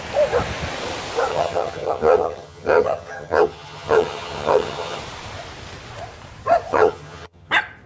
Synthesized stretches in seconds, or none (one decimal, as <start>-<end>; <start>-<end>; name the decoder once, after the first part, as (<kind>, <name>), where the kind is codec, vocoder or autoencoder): 1.3-5.0 (vocoder, HiFi-GAN); 6.7-7.5